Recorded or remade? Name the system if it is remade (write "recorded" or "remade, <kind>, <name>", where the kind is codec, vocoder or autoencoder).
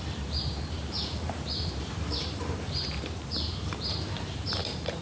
remade, vocoder, BigVGAN v2